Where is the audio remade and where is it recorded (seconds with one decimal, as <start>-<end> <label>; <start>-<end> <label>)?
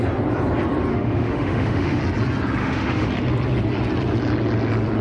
0.0-0.9 recorded; 0.9-2.0 remade; 2.0-2.6 recorded; 2.6-3.1 remade; 3.1-5.0 recorded